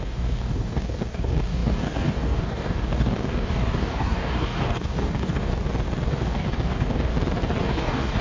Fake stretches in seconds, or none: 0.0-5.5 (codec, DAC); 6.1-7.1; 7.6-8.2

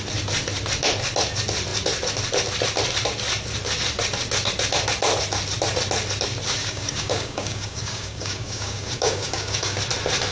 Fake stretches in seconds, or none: 6.6-9.8 (codec, DAC)

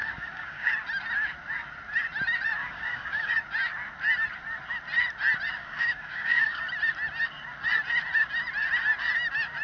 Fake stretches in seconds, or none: 0.0-0.7 (codec, DAC); 2.6-3.3; 5.6-6.6

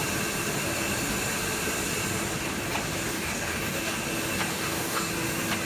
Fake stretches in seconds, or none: 3.1-4.0 (codec, DAC); 4.5-5.1

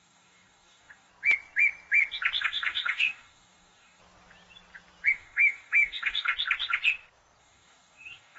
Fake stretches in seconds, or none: 0.0-1.1 (codec, DAC); 2.4-4.0; 5.1-6.3; 7.4-8.4

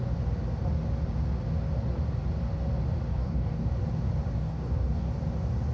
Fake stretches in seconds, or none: 3.1-3.7 (codec, DAC); 4.4-5.1

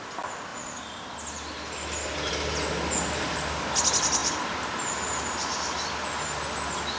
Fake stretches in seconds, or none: none